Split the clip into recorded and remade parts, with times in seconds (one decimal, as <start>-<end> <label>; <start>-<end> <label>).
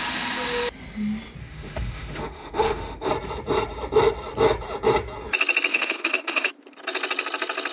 0.0-1.4 recorded; 1.4-3.1 remade; 3.1-5.7 recorded; 5.7-6.5 remade; 6.5-7.7 recorded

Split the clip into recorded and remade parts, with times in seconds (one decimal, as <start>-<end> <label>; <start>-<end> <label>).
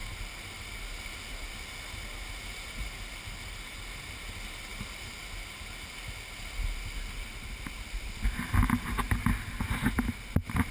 0.0-10.7 recorded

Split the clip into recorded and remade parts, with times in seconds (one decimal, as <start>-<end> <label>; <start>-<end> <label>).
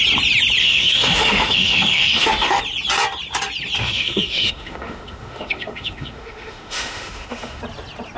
0.0-0.6 recorded; 0.6-2.6 remade; 2.6-3.8 recorded; 3.8-7.6 remade; 7.6-8.2 recorded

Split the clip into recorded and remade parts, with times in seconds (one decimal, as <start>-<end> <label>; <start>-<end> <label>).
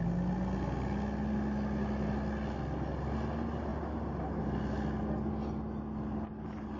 0.0-6.8 recorded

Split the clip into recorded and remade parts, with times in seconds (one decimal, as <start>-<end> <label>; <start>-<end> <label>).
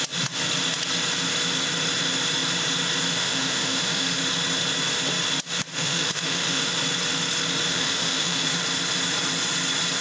0.0-3.2 recorded; 3.2-4.2 remade; 4.2-5.7 recorded; 5.7-6.7 remade; 6.7-7.7 recorded; 7.7-8.5 remade; 8.5-10.0 recorded